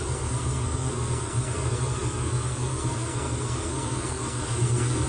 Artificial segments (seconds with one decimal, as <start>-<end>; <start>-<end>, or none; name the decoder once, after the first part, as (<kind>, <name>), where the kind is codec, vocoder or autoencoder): 0.0-5.1 (codec, SNAC)